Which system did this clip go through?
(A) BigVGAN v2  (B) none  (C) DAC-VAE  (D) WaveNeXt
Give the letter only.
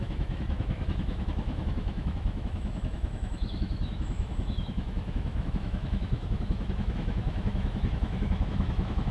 C